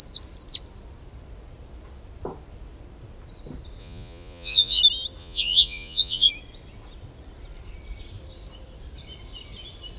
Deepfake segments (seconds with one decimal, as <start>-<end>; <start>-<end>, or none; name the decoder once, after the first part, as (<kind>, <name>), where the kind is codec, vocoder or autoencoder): 3.8-4.8 (vocoder, Vocos); 5.2-6.3